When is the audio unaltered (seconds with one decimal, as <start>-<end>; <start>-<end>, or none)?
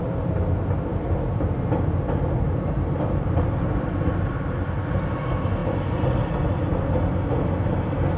0.0-8.2